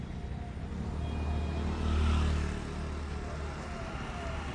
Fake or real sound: real